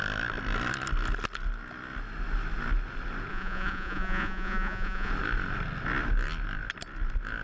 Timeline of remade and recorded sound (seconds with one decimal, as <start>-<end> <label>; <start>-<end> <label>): 0.0-3.3 recorded; 3.3-5.1 remade; 5.1-7.4 recorded